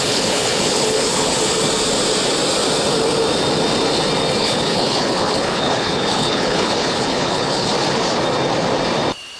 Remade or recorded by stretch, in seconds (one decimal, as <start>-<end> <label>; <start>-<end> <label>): 0.0-1.3 remade; 1.3-4.4 recorded; 4.4-7.7 remade; 7.7-9.4 recorded